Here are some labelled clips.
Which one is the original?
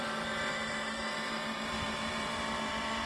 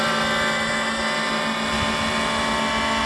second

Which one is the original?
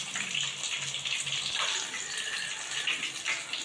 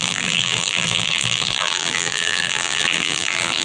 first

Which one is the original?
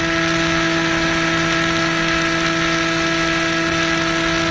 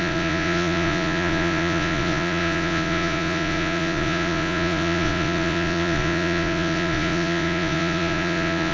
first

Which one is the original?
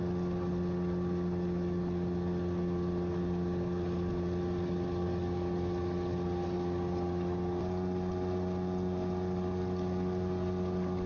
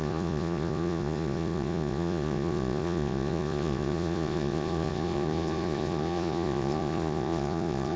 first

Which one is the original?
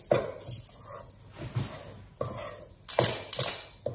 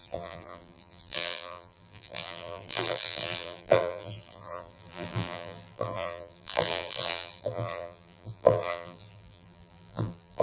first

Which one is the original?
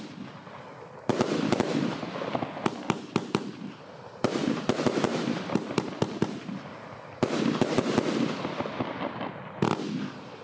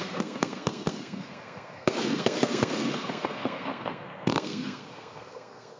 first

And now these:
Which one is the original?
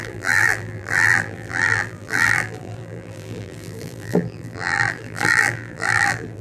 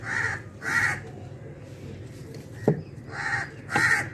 second